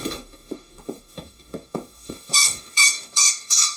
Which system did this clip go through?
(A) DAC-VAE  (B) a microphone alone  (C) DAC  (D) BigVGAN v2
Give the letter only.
C